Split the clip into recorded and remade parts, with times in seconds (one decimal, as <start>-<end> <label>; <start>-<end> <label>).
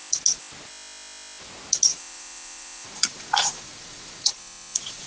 0.0-1.9 recorded; 1.9-5.1 remade